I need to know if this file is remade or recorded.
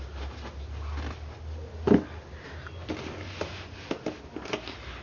recorded